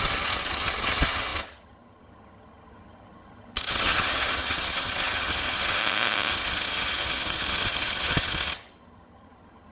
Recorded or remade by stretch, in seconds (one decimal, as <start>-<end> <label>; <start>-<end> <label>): 0.0-5.8 remade; 5.8-6.3 recorded; 6.3-9.7 remade